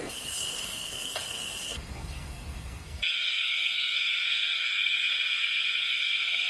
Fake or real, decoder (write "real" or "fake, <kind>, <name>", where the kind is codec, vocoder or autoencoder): fake, codec, SNAC